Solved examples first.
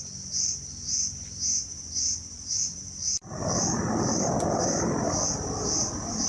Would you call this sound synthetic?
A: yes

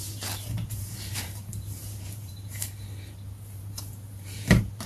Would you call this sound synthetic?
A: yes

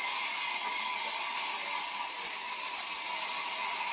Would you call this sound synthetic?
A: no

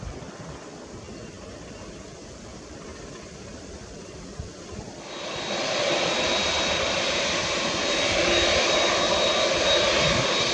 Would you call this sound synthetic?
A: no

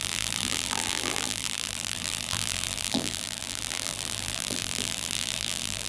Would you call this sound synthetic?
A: yes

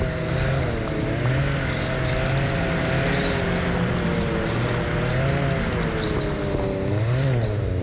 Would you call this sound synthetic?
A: no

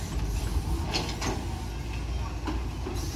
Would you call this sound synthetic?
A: no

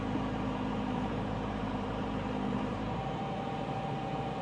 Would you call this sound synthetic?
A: yes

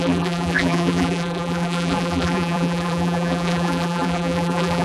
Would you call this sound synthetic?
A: yes